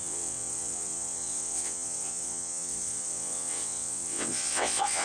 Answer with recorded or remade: remade